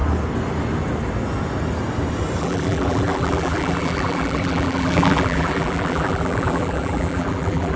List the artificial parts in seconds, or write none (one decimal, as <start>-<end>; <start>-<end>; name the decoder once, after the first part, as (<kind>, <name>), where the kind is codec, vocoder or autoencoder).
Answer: 2.4-7.8 (vocoder, BigVGAN v2)